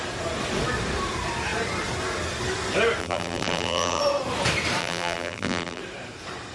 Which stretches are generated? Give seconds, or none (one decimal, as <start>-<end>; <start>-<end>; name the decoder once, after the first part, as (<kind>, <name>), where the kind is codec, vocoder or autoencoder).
3.0-4.0 (vocoder, BigVGAN v2); 4.8-5.8